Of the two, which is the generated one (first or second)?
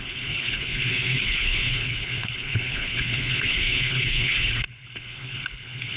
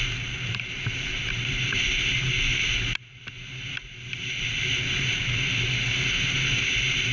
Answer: first